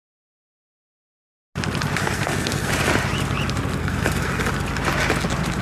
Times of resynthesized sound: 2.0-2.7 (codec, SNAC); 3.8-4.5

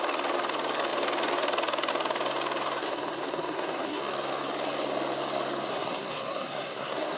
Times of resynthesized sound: 2.8-4.0 (codec, SNAC); 5.7-7.2

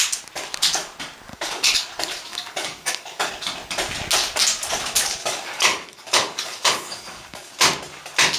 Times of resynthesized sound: 1.3-1.9 (codec, DAC); 2.3-3.3; 5.2-7.5

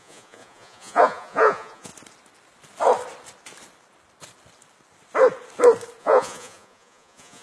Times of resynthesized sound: 0.0-1.9 (vocoder, Vocos); 6.0-7.4

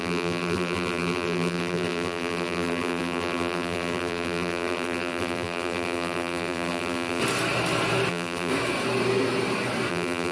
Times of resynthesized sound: 0.0-7.2 (vocoder, BigVGAN v2); 8.1-8.5; 9.9-10.3

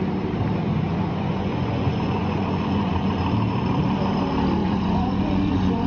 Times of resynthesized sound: 0.6-3.1 (vocoder, Vocos); 4.6-5.9

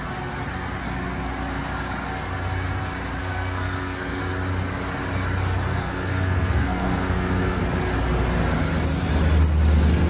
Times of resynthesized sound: 3.2-4.2 (codec, SNAC); 5.7-7.6